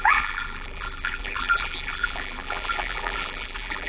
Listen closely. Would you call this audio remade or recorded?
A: remade